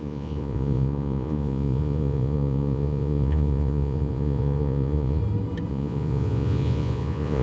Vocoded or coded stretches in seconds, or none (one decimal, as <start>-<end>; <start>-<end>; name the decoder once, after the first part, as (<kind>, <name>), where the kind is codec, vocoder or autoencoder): 0.0-5.2 (vocoder, Vocos); 5.7-7.4